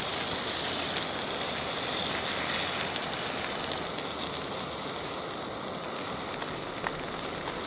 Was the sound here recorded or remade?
recorded